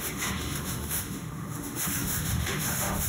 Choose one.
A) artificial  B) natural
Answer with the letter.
A